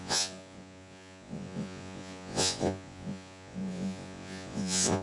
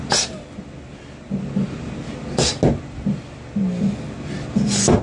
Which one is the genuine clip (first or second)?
second